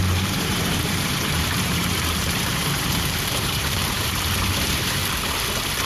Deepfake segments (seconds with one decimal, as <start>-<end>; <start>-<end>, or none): 0.0-5.0